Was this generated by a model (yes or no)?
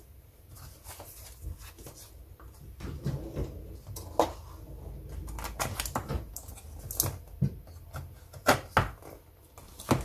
no